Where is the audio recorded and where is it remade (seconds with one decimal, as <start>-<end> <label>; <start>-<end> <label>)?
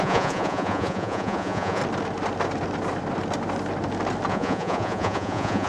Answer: 0.0-1.8 remade; 1.8-4.3 recorded; 4.3-5.7 remade